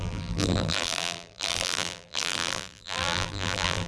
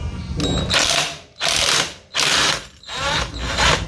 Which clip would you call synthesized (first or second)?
first